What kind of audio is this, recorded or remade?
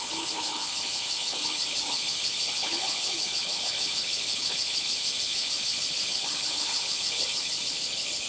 remade